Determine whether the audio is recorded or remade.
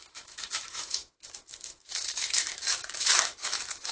remade